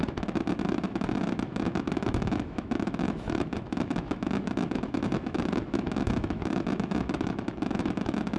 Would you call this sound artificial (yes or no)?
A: yes